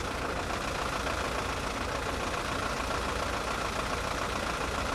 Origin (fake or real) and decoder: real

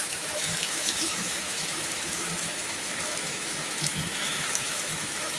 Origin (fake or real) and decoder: fake, autoencoder, DAC-VAE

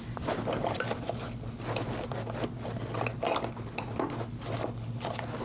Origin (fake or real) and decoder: real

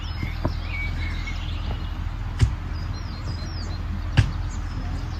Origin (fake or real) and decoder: real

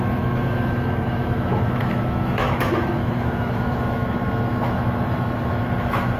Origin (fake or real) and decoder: fake, autoencoder, DAC-VAE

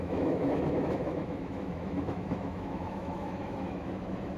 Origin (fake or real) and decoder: fake, autoencoder, DAC-VAE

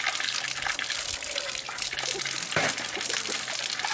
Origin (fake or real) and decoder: real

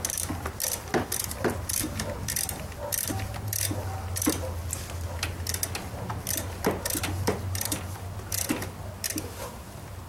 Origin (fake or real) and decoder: real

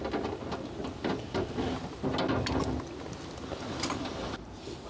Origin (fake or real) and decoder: real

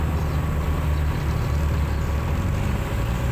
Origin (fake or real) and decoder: real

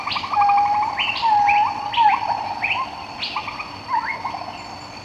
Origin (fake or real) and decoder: real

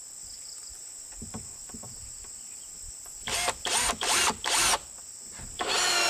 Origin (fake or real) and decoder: real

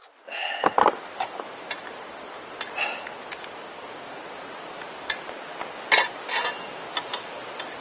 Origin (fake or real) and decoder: real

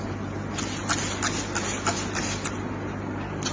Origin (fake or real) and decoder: real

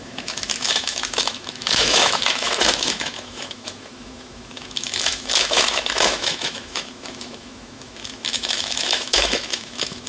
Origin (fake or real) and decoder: fake, autoencoder, DAC-VAE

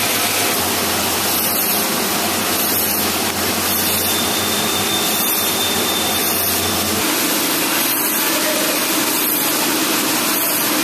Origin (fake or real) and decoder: real